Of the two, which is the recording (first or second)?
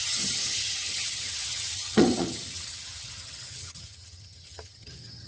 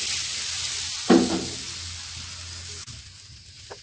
second